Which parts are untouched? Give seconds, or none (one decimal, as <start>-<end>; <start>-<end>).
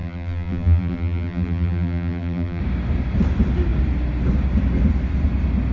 2.6-5.7